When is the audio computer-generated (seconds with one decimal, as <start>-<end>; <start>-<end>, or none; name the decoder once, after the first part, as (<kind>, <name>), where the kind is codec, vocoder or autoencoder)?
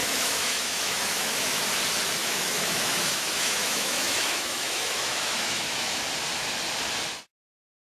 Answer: 0.0-1.6 (autoencoder, DAC-VAE); 2.2-6.0